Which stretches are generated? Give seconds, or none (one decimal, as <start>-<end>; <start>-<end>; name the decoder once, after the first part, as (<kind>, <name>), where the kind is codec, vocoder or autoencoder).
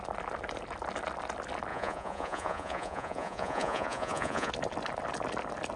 1.7-4.5 (vocoder, Vocos)